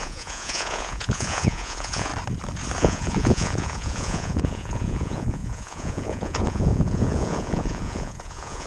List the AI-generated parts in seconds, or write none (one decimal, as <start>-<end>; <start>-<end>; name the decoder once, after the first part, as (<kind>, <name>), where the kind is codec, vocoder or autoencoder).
0.0-2.1 (vocoder, Vocos); 2.8-8.7